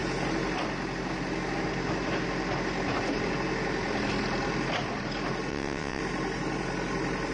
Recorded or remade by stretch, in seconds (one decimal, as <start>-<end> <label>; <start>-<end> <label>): 0.0-5.5 recorded; 5.5-6.0 remade; 6.0-7.3 recorded